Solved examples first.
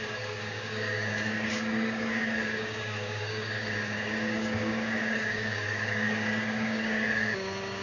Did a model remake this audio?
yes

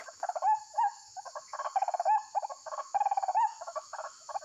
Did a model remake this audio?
yes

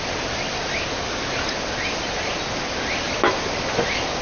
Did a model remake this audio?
no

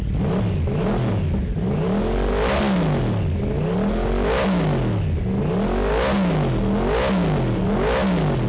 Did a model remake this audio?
no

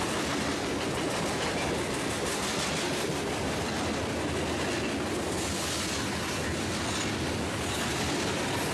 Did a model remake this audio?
no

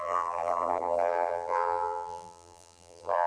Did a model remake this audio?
yes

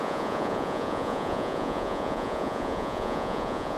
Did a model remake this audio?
yes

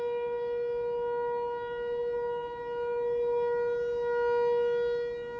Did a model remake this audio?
no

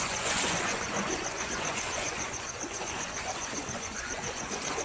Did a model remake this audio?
yes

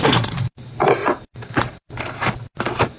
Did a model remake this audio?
yes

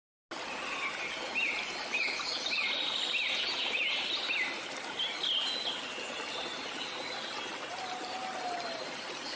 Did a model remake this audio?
no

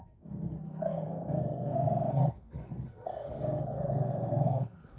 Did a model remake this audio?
yes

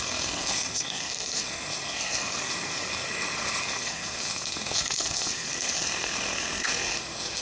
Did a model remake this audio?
yes